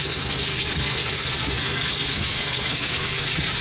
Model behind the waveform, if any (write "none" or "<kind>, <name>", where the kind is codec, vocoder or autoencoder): codec, SNAC